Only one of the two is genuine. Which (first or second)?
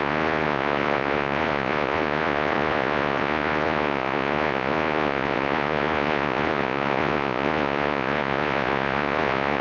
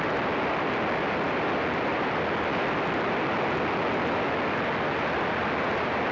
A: second